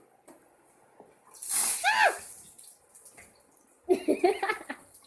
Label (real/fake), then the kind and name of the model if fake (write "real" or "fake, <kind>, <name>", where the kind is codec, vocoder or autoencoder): real